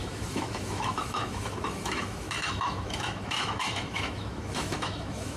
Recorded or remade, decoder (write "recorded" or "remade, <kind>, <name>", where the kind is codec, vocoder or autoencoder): remade, autoencoder, DAC-VAE